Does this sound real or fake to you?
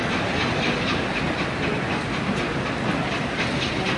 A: real